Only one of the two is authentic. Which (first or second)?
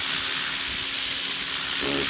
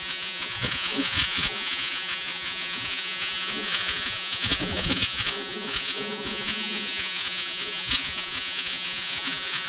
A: first